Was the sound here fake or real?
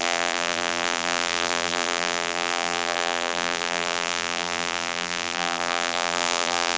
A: fake